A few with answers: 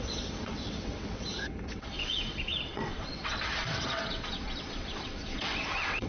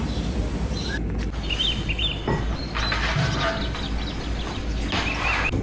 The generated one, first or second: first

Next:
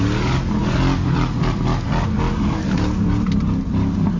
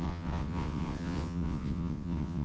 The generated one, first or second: second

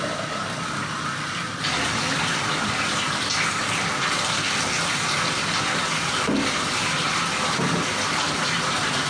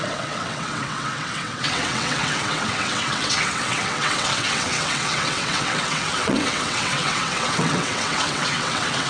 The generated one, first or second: second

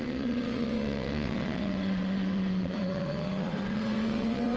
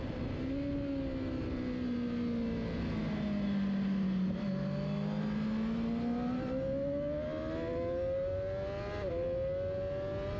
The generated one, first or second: first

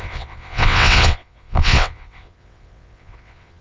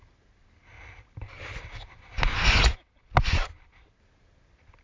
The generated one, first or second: first